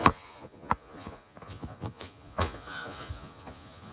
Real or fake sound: fake